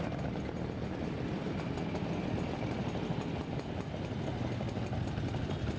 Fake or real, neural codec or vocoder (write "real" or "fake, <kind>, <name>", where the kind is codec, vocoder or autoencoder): real